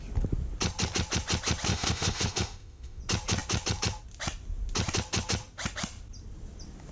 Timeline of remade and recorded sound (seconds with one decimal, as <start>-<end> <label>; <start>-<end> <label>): 0.0-1.7 recorded; 1.7-3.0 remade; 3.0-6.9 recorded